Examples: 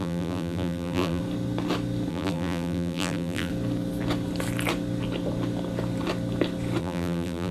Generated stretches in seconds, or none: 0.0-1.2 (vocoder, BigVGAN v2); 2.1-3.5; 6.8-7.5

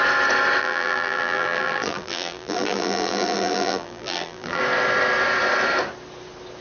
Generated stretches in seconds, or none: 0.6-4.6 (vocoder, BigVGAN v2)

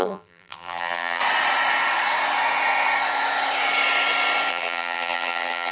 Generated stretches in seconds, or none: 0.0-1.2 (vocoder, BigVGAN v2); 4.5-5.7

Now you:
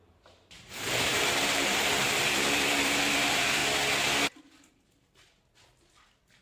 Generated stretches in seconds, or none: 0.0-3.6 (vocoder, BigVGAN v2)